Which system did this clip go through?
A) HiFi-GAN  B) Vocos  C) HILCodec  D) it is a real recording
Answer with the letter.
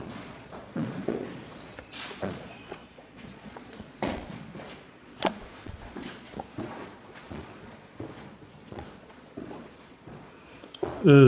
B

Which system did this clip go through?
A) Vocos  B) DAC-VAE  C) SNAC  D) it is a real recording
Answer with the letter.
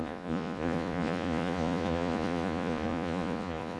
A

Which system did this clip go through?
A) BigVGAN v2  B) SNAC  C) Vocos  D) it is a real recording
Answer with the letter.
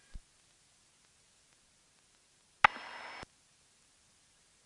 D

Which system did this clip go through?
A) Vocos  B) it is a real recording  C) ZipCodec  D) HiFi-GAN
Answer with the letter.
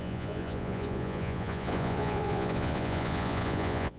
A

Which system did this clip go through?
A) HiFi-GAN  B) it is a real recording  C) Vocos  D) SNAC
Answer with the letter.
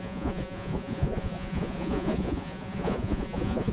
C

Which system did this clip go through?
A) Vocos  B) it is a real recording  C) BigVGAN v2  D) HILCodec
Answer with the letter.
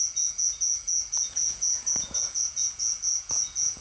A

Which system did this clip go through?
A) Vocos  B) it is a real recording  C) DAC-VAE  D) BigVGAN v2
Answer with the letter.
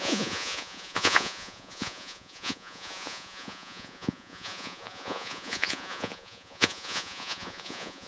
A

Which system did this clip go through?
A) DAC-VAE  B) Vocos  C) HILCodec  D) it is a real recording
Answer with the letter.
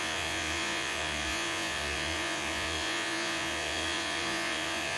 B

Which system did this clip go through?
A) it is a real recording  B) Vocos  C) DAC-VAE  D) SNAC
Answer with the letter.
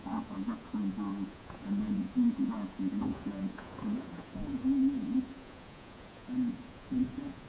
B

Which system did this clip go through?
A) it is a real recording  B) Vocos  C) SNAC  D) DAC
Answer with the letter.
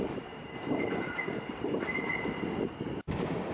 A